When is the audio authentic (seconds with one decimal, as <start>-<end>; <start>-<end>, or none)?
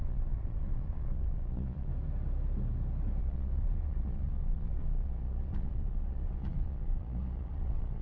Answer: 1.9-3.2